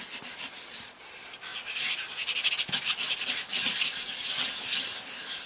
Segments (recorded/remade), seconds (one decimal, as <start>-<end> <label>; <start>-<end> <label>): 0.0-5.5 recorded